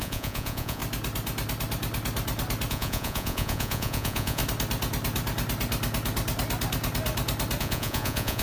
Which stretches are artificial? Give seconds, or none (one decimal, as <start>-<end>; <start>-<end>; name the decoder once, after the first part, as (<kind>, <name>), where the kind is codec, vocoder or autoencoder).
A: 0.0-0.8 (vocoder, Vocos); 2.7-4.4; 7.6-8.4